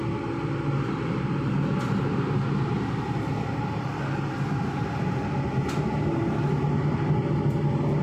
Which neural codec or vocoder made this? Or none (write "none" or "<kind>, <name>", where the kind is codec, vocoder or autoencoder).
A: none